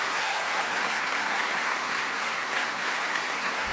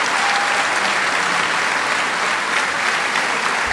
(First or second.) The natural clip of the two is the second